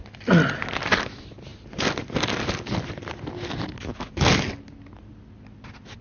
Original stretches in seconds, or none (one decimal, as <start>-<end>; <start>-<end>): 0.0-6.0